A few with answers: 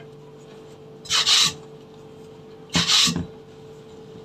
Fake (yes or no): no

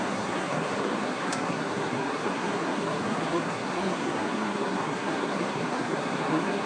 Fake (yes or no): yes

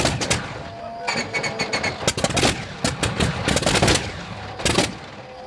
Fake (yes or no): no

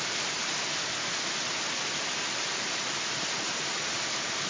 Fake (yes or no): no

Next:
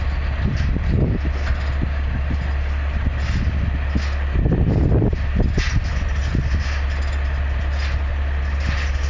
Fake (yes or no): no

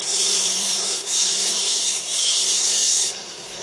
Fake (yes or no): yes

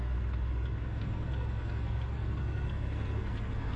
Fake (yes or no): yes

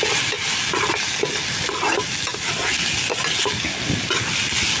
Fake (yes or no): no